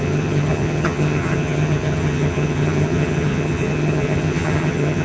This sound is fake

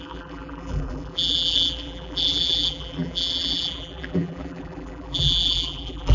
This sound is fake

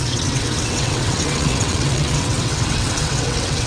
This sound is fake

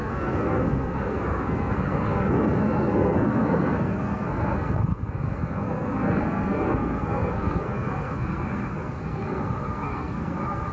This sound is fake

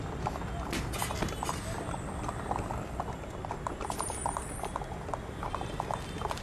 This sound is real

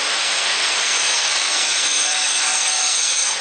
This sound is fake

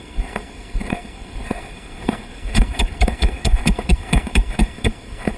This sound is fake